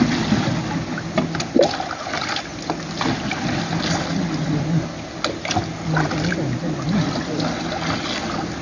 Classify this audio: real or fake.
real